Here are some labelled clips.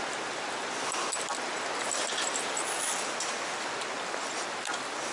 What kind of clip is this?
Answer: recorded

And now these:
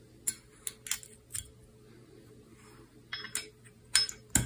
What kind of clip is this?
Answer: recorded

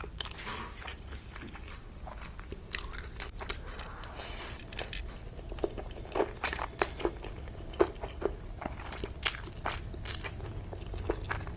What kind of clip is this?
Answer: recorded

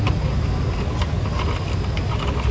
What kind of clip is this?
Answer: recorded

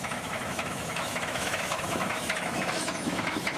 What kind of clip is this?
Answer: remade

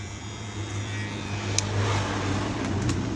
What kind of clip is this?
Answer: recorded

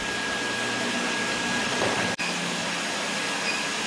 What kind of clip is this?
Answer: recorded